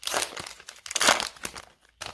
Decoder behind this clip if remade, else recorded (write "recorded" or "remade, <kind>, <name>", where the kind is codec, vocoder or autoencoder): recorded